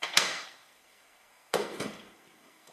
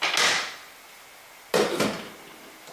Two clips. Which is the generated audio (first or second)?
first